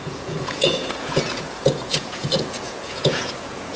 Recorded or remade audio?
remade